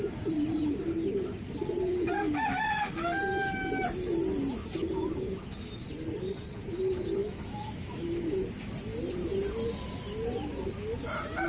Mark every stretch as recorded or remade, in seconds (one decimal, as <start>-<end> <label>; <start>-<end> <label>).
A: 0.0-7.2 recorded; 7.2-8.4 remade; 8.4-11.5 recorded